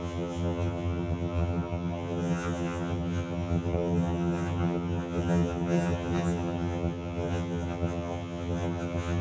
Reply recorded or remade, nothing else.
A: remade